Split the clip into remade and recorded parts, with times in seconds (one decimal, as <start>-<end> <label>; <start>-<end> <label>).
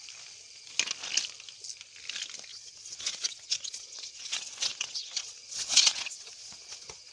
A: 0.0-2.5 recorded; 2.5-7.1 remade